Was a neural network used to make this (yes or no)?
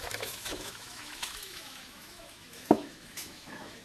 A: yes